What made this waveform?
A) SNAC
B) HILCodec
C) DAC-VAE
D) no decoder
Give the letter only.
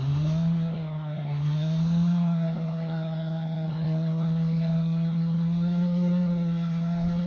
A